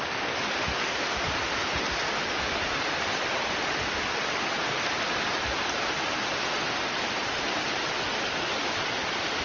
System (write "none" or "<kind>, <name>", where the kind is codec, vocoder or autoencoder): vocoder, BigVGAN v2